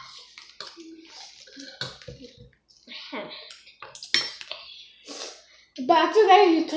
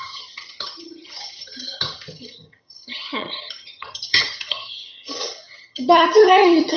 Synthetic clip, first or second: second